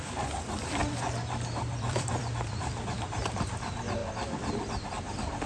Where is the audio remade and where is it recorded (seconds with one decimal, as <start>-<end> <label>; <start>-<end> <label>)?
0.0-4.0 remade; 4.0-4.9 recorded; 4.9-5.5 remade